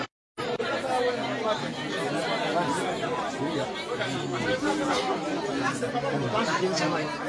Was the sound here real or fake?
real